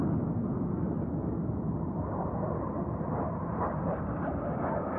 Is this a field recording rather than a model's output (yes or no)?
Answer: yes